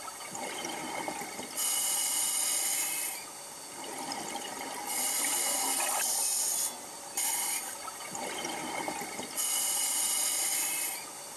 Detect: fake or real fake